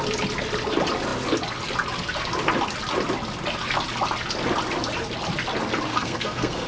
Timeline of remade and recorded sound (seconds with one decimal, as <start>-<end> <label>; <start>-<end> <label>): 0.0-5.9 recorded; 5.9-6.7 remade